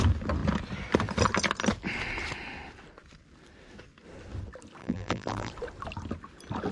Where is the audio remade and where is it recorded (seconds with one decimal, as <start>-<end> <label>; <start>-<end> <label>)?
0.0-4.8 recorded; 4.8-5.5 remade; 5.5-6.7 recorded